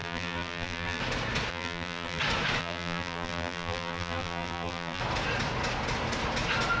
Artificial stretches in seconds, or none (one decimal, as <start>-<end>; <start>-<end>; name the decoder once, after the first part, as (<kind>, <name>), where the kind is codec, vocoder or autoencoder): 0.0-1.0 (vocoder, BigVGAN v2); 1.5-2.2; 2.6-5.0